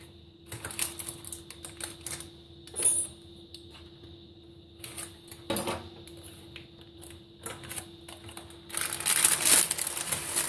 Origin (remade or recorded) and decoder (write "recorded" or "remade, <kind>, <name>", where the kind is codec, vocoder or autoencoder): recorded